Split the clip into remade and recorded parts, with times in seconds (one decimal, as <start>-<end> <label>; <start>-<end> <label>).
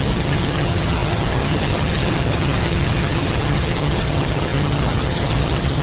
0.0-5.8 remade